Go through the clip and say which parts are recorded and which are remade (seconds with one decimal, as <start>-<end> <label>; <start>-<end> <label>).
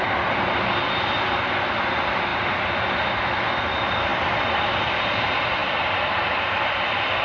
0.0-4.1 recorded; 4.1-5.0 remade; 5.0-7.2 recorded